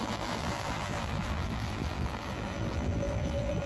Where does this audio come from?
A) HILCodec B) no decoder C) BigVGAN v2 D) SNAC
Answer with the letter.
C